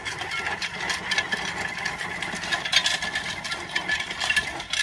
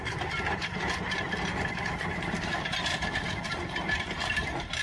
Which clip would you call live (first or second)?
first